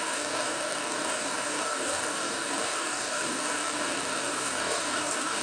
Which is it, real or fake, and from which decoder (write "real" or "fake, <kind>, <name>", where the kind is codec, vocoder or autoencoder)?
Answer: fake, codec, DAC